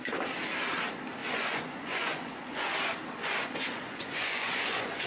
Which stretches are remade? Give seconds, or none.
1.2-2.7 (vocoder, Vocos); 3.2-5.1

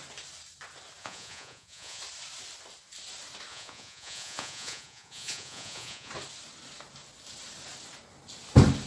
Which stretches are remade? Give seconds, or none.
1.0-2.0 (vocoder, Vocos); 3.5-6.1

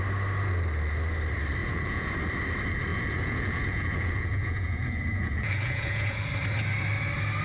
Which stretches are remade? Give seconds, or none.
1.6-2.1 (vocoder, Vocos); 2.9-6.2

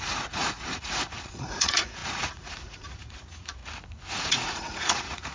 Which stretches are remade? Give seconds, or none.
0.0-3.6 (vocoder, Vocos); 4.1-5.3